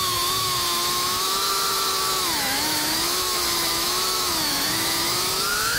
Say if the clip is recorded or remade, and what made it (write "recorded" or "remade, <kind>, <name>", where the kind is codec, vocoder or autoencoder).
remade, autoencoder, DAC-VAE